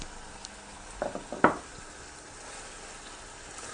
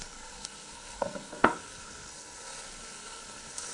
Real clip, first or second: first